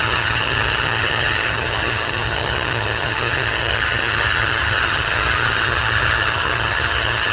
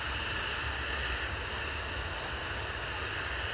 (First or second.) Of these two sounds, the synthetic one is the first